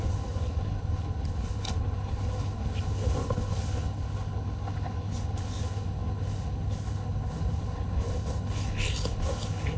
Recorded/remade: remade